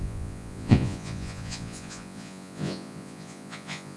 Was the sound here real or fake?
fake